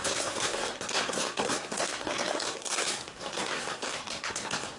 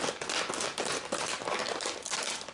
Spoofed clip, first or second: first